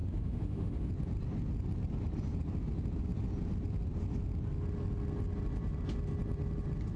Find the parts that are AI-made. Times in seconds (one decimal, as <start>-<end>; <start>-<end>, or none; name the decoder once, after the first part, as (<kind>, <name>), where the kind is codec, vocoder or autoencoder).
0.0-0.9 (autoencoder, DAC-VAE)